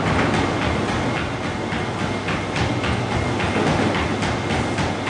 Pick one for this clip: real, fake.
real